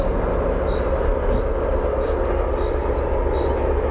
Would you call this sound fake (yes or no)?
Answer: no